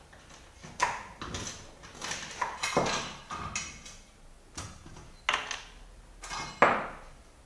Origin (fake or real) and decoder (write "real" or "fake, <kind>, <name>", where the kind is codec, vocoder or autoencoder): real